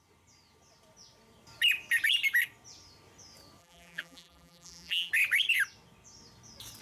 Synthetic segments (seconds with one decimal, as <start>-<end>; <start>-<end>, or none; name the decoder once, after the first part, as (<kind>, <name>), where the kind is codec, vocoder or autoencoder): 3.6-5.1 (vocoder, BigVGAN v2)